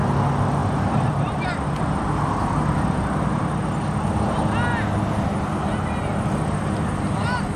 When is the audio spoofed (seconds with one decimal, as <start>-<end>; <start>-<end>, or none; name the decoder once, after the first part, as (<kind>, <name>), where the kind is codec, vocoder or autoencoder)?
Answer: 0.6-3.6 (vocoder, BigVGAN v2)